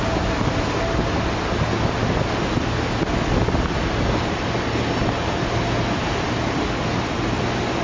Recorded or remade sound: recorded